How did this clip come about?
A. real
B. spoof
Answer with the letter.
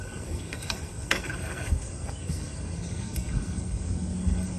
B